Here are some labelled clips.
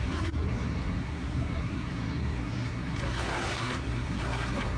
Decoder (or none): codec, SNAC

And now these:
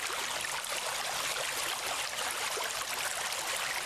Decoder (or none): none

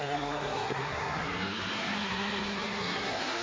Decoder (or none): codec, SNAC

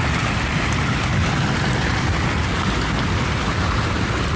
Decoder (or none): none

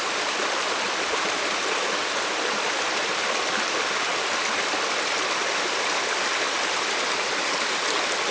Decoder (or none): none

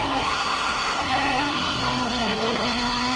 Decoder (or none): codec, SNAC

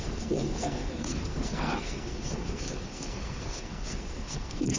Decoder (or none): codec, SNAC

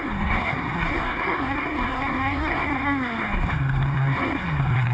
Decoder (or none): codec, SNAC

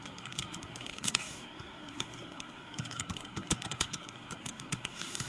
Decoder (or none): codec, SNAC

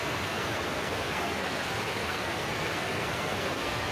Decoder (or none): codec, SNAC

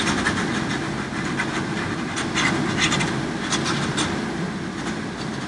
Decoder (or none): none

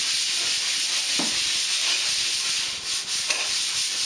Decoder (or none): none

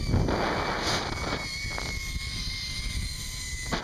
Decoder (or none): none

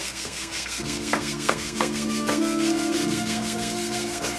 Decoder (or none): codec, SNAC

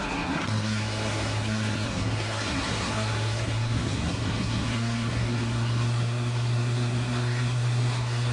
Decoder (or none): codec, SNAC